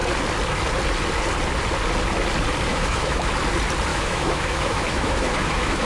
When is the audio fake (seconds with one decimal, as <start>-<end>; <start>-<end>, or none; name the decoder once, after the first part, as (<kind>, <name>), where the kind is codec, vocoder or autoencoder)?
2.7-3.3 (autoencoder, DAC-VAE); 3.9-5.9